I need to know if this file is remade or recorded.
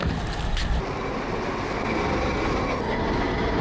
recorded